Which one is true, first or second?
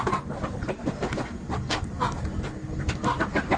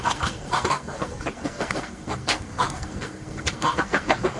first